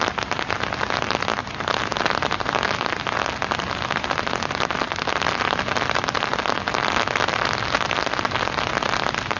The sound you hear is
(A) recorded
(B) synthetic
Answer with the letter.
A